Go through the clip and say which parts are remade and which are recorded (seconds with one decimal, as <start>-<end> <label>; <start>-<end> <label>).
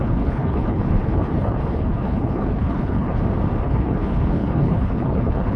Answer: 0.0-3.2 remade; 3.2-3.6 recorded; 3.6-5.6 remade